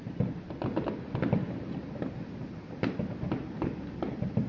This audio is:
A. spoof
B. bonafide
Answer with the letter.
B